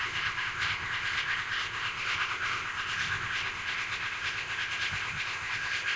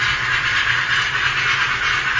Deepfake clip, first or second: first